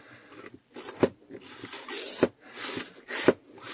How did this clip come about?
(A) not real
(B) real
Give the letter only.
B